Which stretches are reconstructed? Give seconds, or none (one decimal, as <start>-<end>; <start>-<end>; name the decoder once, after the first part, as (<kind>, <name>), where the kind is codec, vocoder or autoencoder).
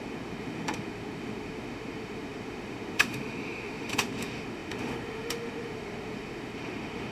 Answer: 0.0-7.1 (autoencoder, DAC-VAE)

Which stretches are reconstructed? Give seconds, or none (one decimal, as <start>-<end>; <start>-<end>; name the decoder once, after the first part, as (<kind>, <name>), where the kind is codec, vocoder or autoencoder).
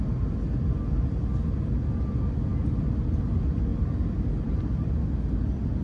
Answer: none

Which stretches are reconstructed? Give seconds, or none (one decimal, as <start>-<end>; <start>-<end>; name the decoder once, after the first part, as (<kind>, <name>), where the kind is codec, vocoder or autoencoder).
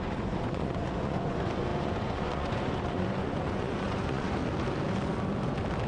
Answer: 0.0-4.4 (vocoder, Vocos)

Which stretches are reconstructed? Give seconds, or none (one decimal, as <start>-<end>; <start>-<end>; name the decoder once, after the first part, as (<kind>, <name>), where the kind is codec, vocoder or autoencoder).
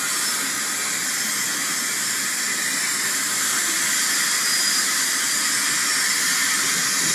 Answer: 1.6-5.3 (vocoder, BigVGAN v2)